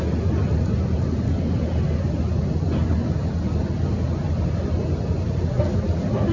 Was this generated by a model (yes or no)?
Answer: no